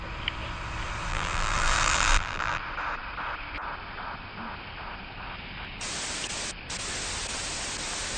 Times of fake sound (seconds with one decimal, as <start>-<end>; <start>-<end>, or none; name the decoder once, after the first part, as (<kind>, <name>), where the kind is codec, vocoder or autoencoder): 1.1-2.6 (vocoder, BigVGAN v2)